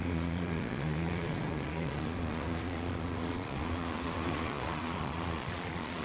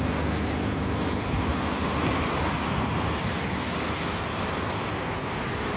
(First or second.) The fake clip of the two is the first